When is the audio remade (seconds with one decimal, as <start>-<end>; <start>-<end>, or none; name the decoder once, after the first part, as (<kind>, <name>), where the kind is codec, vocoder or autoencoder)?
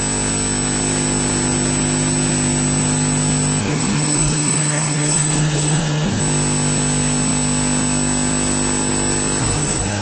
3.6-6.2 (codec, SNAC); 9.4-10.0